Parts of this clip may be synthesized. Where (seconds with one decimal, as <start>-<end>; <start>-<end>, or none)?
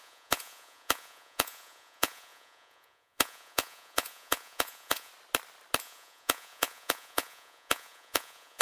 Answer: 0.0-5.1; 5.8-8.6